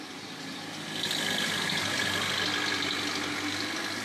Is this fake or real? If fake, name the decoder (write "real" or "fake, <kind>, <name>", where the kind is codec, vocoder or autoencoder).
real